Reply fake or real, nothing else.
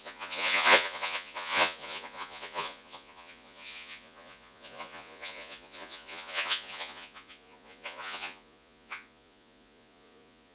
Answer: fake